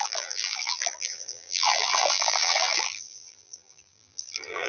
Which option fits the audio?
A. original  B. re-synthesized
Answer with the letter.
B